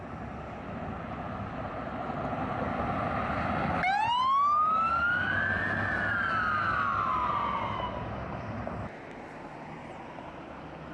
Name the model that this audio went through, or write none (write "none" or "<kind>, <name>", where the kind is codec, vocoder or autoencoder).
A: none